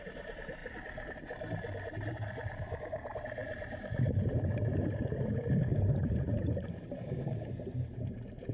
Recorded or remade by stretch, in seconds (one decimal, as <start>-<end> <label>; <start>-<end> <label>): 0.0-0.6 recorded; 0.6-2.3 remade; 2.3-5.7 recorded; 5.7-8.5 remade